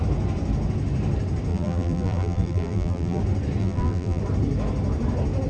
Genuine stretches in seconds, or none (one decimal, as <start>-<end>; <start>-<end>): 0.0-1.5; 3.2-3.6; 4.2-5.5